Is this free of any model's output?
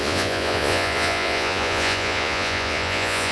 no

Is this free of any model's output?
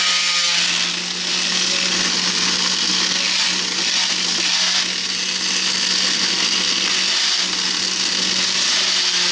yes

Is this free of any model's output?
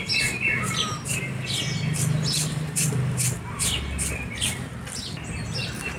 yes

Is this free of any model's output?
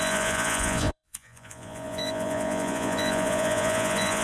no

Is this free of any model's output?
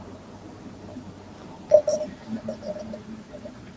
yes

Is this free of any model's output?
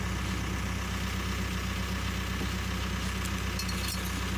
yes